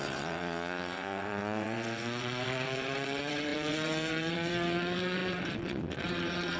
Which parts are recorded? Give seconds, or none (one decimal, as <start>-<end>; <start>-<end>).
none